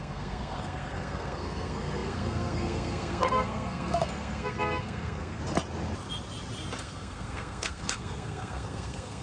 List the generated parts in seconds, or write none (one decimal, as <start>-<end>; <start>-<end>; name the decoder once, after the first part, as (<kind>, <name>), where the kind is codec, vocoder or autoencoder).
0.0-5.4 (codec, SNAC); 6.8-9.2

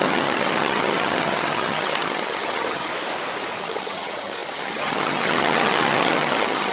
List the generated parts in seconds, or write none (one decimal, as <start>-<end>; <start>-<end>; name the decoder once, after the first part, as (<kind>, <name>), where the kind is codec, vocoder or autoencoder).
0.0-2.9 (vocoder, HiFi-GAN); 3.6-6.7

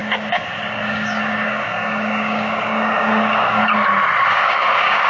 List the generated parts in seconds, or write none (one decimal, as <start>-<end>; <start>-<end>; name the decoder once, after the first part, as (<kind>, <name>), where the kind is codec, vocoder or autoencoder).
0.0-3.6 (codec, DAC); 4.3-5.1

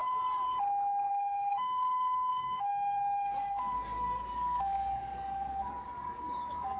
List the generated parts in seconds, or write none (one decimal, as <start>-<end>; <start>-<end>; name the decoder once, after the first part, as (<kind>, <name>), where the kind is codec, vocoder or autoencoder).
1.1-6.8 (codec, DAC)

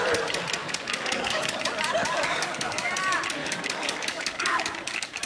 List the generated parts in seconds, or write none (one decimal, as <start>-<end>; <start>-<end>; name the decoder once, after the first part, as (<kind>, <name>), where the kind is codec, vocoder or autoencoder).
0.6-1.6 (codec, DAC); 2.0-2.9; 3.4-5.3

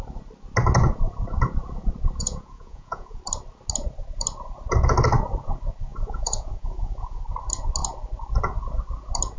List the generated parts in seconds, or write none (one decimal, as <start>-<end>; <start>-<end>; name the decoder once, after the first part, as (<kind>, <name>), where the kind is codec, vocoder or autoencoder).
2.2-3.2 (vocoder, Vocos); 5.9-7.2

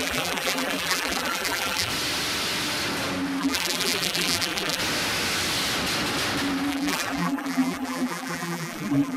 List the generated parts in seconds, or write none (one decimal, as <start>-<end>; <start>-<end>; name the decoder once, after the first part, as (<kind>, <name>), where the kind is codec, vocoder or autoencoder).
0.0-1.9 (vocoder, BigVGAN v2); 3.4-4.8; 6.7-9.2